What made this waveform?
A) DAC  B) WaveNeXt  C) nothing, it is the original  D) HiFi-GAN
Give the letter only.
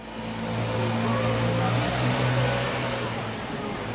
C